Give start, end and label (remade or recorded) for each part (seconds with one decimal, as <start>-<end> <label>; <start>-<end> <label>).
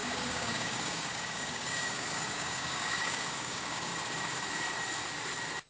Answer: 0.0-3.9 remade; 3.9-5.7 recorded